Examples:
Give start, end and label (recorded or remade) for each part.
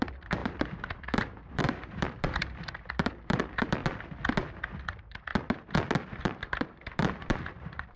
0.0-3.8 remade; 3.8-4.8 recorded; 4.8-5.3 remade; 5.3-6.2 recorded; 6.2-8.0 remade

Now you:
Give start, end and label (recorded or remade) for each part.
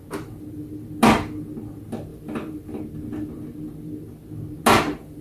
0.0-2.1 recorded; 2.1-2.8 remade; 2.8-5.2 recorded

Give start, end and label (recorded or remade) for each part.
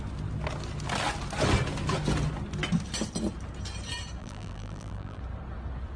0.0-4.2 recorded; 4.2-5.2 remade; 5.2-6.0 recorded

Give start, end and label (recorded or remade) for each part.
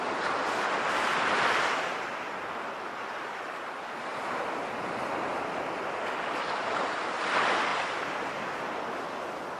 0.0-9.6 recorded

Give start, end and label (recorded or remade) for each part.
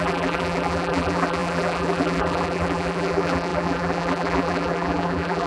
0.0-5.5 remade